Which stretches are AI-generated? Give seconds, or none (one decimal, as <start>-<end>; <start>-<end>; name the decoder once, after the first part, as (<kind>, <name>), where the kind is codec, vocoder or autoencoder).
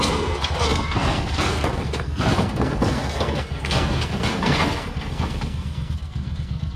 0.0-6.8 (codec, SNAC)